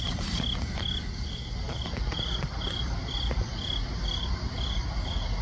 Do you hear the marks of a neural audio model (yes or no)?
no